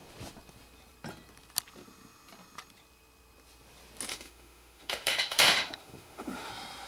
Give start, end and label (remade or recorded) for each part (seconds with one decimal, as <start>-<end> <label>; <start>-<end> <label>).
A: 0.0-4.1 recorded; 4.1-6.5 remade; 6.5-6.9 recorded